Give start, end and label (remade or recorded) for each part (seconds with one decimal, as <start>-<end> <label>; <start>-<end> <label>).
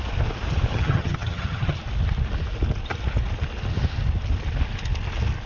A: 0.0-0.7 recorded; 0.7-1.8 remade; 1.8-5.5 recorded